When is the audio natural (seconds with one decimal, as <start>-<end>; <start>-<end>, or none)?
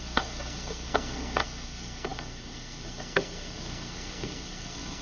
none